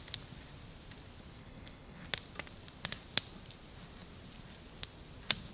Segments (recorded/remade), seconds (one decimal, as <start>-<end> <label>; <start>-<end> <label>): 0.0-1.4 recorded; 1.4-2.1 remade; 2.1-5.5 recorded